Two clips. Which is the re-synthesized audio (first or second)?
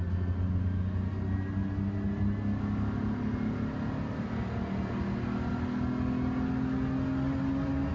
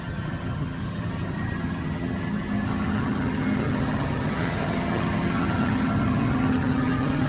second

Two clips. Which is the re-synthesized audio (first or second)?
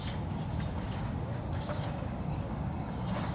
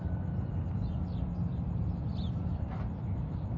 first